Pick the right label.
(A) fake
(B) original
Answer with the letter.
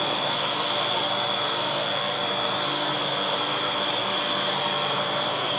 A